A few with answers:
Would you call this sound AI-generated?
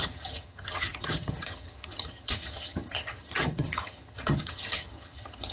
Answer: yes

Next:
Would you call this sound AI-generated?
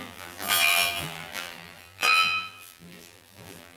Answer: yes